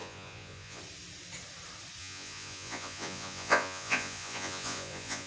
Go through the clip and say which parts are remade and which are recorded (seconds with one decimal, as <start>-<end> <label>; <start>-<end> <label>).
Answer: 0.0-0.8 remade; 0.8-2.0 recorded; 2.0-5.3 remade